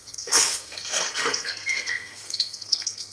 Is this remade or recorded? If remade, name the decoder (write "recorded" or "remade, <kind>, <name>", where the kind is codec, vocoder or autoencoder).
remade, codec, SNAC